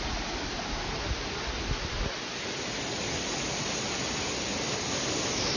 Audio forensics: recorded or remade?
recorded